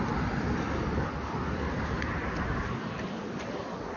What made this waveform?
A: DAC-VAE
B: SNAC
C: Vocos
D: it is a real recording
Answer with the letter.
D